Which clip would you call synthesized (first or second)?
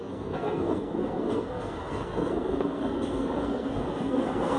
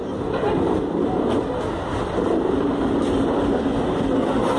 first